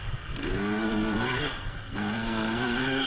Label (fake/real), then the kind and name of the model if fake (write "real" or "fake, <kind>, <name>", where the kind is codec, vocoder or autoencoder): fake, codec, SNAC